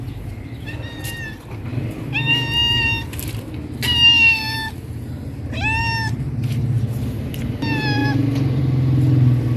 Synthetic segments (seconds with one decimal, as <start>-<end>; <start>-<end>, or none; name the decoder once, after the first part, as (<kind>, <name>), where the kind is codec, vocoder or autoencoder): none